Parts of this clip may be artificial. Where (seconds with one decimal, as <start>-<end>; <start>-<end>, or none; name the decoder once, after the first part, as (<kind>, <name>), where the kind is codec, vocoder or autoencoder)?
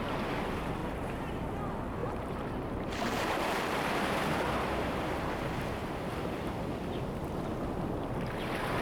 0.8-1.4 (vocoder, BigVGAN v2); 2.0-4.4; 5.8-6.5